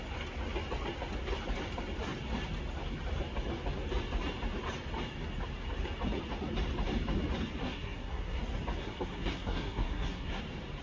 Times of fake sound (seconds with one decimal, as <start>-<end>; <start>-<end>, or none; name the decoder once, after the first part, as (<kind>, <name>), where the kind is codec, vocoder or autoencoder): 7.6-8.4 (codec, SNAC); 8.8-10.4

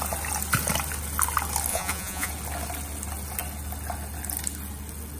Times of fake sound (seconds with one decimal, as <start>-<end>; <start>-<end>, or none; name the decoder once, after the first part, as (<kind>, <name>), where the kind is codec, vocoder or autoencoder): 1.7-2.3 (vocoder, Vocos)

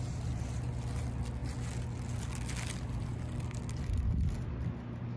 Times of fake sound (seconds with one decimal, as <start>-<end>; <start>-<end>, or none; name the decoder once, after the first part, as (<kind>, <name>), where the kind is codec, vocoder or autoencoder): none